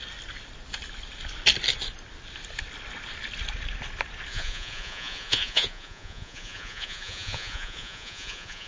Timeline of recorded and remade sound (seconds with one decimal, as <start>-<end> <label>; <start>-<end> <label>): 0.0-4.3 recorded; 4.3-8.7 remade